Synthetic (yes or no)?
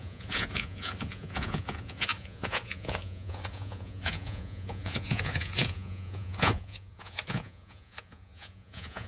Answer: yes